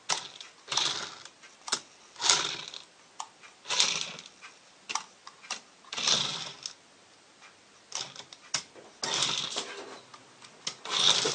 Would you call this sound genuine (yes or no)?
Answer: yes